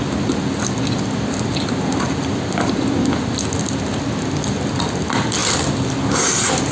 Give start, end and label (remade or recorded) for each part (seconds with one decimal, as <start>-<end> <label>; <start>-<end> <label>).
0.0-6.7 recorded